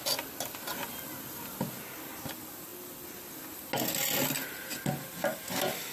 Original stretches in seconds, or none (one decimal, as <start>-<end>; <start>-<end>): 0.0-5.9